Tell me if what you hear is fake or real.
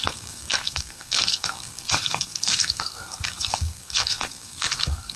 fake